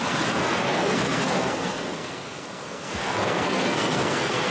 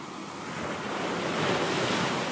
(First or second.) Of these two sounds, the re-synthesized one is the first